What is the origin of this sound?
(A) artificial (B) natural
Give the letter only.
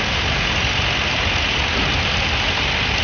B